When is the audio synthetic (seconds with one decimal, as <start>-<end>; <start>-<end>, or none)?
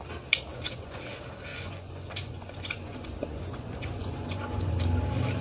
0.5-1.0; 1.5-4.7